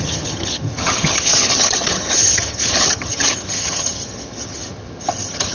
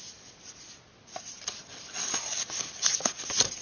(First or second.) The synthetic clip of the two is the first